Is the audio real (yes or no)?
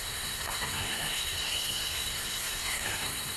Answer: no